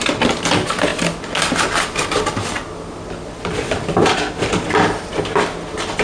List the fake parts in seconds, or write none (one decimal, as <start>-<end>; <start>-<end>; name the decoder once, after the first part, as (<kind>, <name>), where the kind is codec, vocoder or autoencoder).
none